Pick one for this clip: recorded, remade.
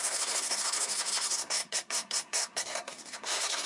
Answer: remade